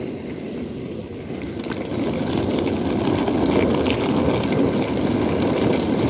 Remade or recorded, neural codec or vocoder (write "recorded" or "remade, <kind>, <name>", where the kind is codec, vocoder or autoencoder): recorded